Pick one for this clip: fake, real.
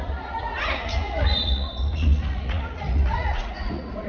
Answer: fake